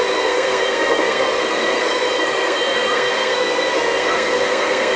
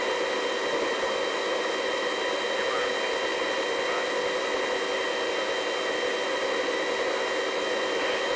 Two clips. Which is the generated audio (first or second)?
first